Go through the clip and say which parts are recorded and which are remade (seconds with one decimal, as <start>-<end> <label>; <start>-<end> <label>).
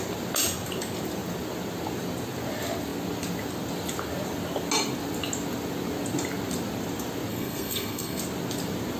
0.0-7.3 recorded; 7.3-8.2 remade; 8.2-9.0 recorded